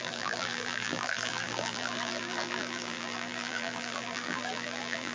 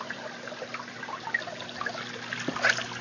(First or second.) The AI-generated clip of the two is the first